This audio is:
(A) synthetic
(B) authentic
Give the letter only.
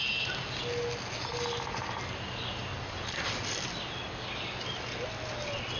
B